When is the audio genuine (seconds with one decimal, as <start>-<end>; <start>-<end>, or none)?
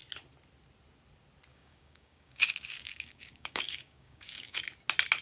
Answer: 0.0-1.5; 4.6-5.2